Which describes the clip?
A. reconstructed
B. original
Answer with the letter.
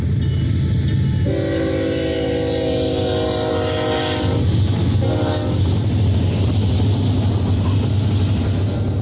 B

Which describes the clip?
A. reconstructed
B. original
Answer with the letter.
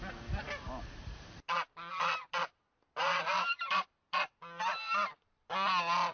B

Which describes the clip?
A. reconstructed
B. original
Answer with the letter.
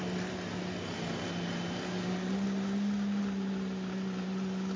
B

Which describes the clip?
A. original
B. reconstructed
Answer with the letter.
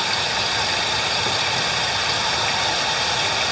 B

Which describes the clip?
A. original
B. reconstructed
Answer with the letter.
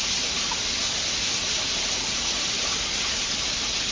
A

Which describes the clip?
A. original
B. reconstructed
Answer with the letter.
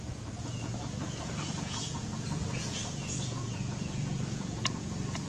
B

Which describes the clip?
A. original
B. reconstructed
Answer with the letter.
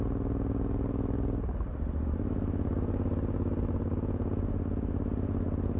A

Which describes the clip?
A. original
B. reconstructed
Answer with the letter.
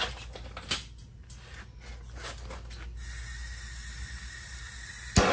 A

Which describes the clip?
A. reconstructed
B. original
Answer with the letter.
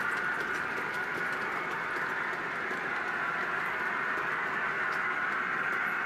B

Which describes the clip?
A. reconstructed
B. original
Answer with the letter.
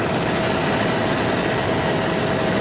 B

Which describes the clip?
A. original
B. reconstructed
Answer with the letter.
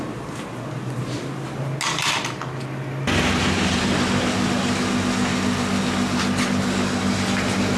A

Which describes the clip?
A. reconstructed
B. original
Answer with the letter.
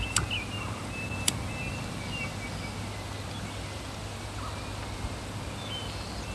B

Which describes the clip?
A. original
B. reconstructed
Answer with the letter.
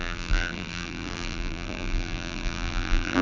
B